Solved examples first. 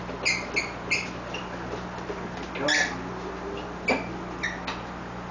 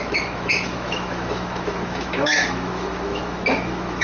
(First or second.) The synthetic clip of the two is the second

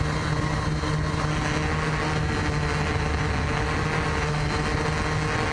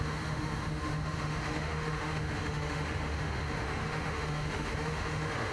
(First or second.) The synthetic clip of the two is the second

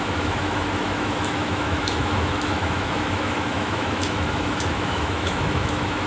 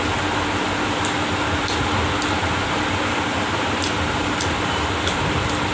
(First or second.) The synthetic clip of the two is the first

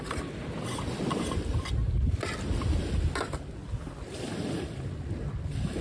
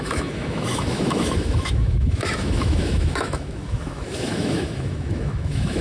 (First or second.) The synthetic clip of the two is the second